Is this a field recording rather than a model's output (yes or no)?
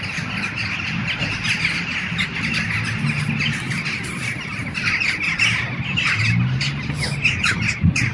yes